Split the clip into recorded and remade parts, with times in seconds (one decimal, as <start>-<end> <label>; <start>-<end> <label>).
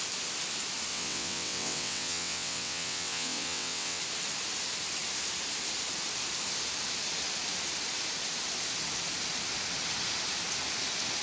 0.0-0.9 recorded; 0.9-4.0 remade; 4.0-11.2 recorded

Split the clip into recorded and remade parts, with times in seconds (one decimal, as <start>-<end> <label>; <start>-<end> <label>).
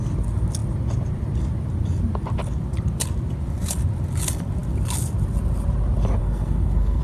0.0-6.2 recorded; 6.2-7.0 remade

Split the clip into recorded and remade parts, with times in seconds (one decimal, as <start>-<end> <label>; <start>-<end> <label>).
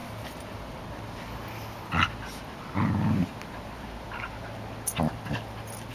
0.0-0.8 remade; 0.8-5.9 recorded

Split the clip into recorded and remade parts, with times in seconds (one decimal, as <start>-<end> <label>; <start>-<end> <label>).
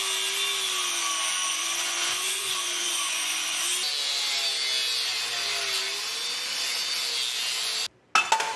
0.0-1.5 recorded; 1.5-3.7 remade; 3.7-8.6 recorded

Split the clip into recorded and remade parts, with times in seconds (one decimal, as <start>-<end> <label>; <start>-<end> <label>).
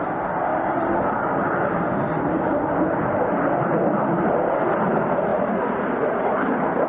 0.0-6.9 recorded